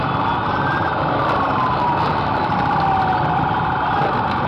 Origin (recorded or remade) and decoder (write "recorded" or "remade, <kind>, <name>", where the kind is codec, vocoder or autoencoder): recorded